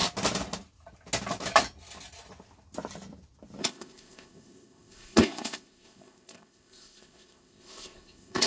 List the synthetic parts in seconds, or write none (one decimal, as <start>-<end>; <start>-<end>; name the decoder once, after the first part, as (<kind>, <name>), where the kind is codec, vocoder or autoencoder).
3.6-8.5 (codec, ZipCodec)